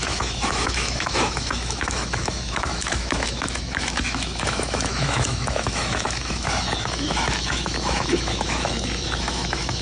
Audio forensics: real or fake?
fake